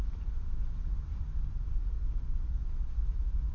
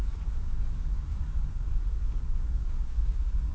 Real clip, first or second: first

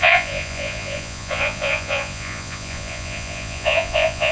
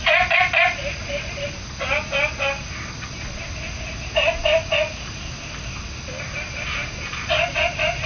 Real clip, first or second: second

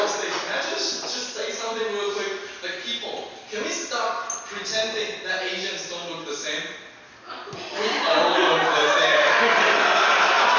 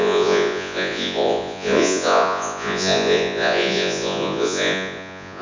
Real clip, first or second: first